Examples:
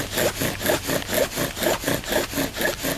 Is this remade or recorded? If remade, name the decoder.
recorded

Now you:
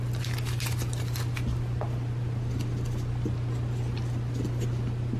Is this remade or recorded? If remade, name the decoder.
recorded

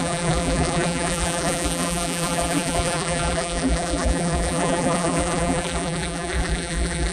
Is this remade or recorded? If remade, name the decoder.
remade, vocoder, BigVGAN v2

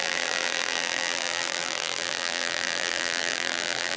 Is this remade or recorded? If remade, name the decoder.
remade, vocoder, BigVGAN v2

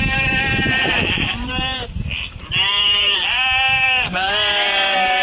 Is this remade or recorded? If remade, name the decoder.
remade, vocoder, BigVGAN v2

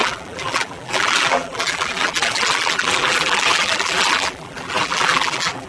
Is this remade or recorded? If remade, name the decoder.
remade, vocoder, BigVGAN v2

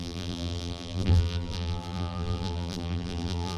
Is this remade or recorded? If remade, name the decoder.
remade, vocoder, BigVGAN v2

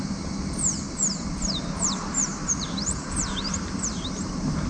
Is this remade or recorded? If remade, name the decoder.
remade, vocoder, BigVGAN v2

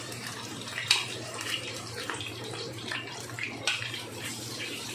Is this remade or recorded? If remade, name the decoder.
remade, vocoder, BigVGAN v2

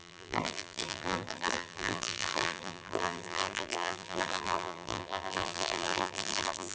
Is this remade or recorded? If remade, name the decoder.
remade, vocoder, BigVGAN v2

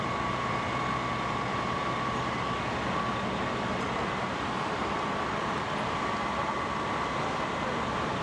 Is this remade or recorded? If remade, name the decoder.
recorded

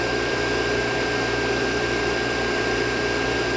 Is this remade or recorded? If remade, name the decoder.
remade, vocoder, BigVGAN v2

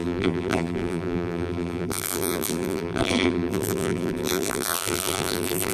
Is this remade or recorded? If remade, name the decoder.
remade, vocoder, BigVGAN v2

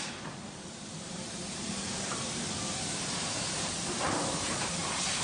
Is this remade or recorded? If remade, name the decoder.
remade, vocoder, BigVGAN v2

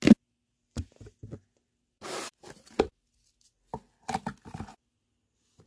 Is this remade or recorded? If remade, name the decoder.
recorded